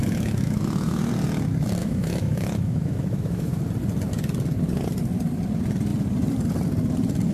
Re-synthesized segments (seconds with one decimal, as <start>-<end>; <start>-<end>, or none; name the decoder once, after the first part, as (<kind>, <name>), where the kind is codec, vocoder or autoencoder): 0.0-1.1 (autoencoder, DAC-VAE); 1.8-3.6